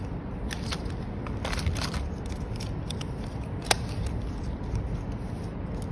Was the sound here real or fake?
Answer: real